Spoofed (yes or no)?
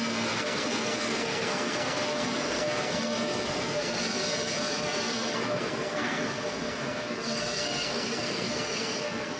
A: yes